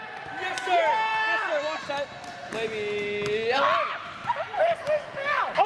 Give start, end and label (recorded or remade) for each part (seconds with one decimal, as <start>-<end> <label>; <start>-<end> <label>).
0.0-5.7 recorded